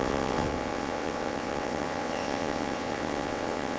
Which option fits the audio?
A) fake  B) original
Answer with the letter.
A